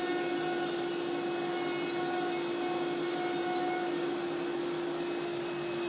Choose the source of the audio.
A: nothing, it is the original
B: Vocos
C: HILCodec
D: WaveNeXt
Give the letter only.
A